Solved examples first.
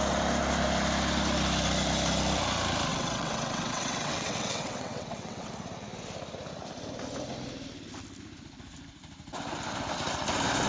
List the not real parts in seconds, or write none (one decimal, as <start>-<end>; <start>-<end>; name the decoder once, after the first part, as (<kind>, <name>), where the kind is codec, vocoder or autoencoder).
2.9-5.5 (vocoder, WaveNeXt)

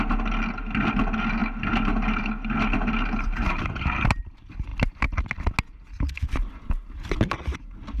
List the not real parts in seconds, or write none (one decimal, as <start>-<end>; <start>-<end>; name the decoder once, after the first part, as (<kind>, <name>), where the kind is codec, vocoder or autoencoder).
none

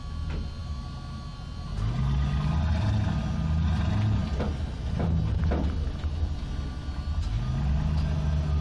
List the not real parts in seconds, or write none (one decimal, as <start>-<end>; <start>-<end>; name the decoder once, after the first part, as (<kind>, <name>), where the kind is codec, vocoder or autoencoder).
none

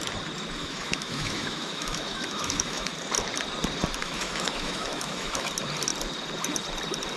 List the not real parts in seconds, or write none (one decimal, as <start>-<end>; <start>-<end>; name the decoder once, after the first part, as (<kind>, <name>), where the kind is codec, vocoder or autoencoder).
0.6-2.9 (autoencoder, DAC-VAE); 4.0-5.5

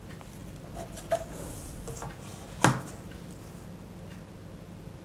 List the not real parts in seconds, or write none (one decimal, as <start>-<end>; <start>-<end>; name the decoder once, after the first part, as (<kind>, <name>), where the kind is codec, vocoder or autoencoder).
none